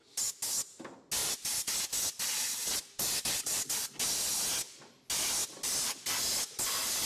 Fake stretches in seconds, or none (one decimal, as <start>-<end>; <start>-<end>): 1.2-2.8; 5.4-6.1

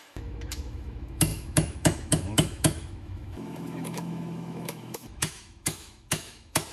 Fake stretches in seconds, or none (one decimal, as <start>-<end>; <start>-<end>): 0.0-6.7

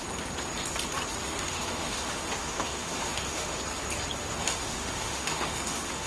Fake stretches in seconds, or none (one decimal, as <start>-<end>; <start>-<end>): 1.2-3.6; 4.2-6.1